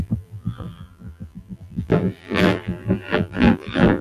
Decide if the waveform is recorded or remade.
remade